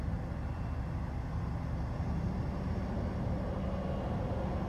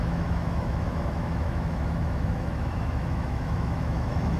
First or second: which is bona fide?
first